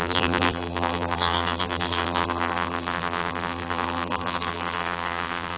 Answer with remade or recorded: remade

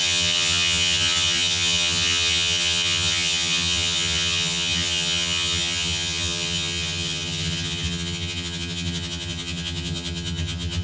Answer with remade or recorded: remade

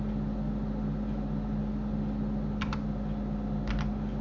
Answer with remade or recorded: recorded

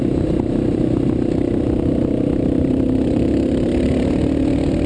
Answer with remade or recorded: remade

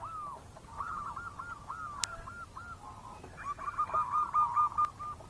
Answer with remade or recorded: recorded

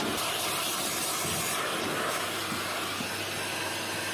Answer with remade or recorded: recorded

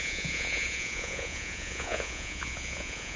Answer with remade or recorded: remade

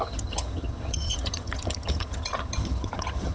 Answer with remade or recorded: remade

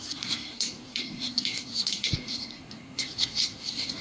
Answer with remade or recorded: remade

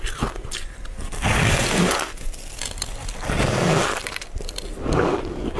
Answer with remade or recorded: recorded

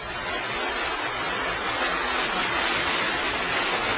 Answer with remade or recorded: recorded